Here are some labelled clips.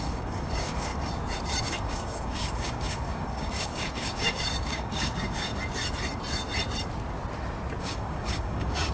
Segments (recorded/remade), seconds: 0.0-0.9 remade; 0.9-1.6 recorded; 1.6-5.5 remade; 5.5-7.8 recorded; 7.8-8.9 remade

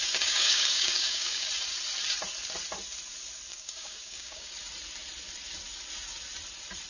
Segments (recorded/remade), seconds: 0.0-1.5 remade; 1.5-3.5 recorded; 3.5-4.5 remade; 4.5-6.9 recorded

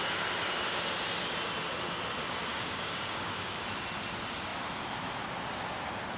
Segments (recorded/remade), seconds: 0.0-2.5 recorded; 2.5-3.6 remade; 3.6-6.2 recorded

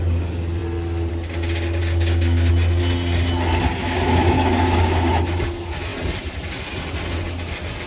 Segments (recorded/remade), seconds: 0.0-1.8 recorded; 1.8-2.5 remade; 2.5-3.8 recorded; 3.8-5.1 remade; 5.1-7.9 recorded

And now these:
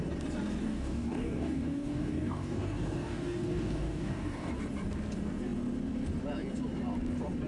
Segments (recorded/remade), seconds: 0.0-0.6 recorded; 0.6-4.5 remade; 4.5-7.5 recorded